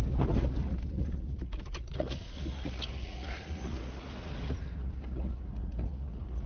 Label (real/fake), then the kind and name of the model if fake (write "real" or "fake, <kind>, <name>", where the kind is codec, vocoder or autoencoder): fake, vocoder, Vocos